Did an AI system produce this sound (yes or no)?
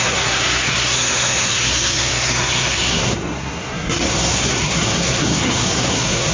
yes